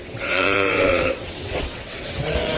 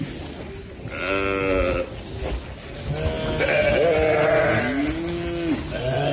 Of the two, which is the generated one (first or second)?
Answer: first